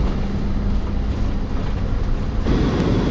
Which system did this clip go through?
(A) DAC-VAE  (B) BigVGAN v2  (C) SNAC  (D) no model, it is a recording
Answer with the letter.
D